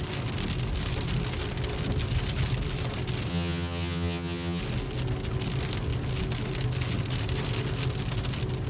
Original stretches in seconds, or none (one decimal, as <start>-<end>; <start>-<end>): 0.0-3.3; 4.6-8.7